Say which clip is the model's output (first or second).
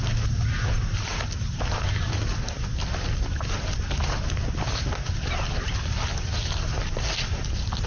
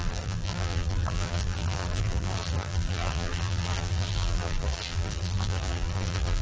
second